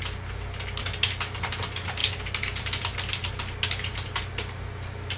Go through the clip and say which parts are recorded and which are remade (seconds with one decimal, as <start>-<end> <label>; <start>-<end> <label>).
0.0-5.2 recorded